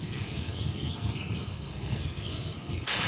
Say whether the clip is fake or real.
fake